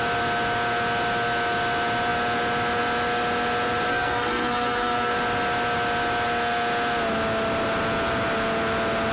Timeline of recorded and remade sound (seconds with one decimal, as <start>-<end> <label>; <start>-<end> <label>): 0.0-3.9 recorded; 3.9-5.1 remade; 5.1-9.1 recorded